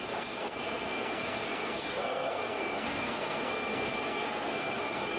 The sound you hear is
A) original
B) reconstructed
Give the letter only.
B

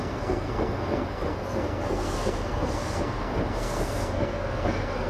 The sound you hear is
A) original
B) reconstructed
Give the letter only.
B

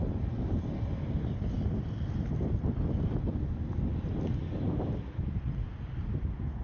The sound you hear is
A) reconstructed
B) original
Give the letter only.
B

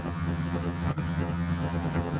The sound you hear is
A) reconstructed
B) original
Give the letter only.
A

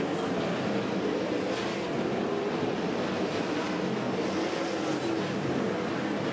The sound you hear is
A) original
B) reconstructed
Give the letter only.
A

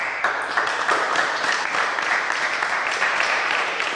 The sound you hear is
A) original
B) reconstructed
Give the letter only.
B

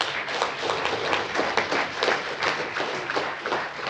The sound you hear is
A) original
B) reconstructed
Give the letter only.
A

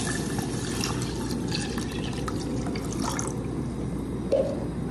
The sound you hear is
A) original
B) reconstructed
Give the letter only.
A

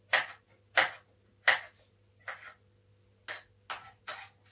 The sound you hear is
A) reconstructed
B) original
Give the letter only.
B